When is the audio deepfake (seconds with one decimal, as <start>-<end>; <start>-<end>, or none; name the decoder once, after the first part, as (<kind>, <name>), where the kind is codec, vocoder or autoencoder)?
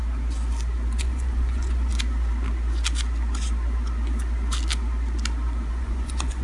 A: 1.0-1.9 (vocoder, Vocos); 5.7-6.4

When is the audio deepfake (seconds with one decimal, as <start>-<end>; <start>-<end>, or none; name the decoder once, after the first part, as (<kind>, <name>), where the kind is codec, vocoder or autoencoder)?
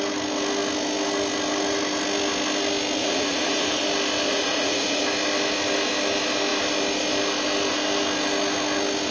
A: 3.0-3.8 (vocoder, Vocos); 4.3-5.0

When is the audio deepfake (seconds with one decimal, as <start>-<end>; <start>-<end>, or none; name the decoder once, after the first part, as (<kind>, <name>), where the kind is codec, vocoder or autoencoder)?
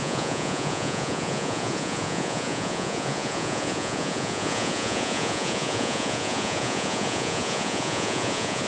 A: 0.0-8.7 (vocoder, Vocos)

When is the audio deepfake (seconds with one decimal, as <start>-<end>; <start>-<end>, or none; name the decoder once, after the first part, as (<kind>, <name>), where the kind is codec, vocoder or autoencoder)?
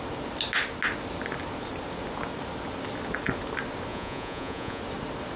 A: 3.9-4.8 (vocoder, Vocos)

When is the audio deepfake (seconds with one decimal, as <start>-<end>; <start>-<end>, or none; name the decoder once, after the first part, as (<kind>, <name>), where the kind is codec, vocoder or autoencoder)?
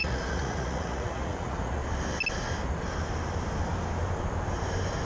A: 0.0-1.8 (vocoder, Vocos)